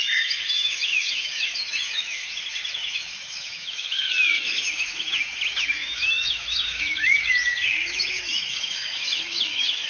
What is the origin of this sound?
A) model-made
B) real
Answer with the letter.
A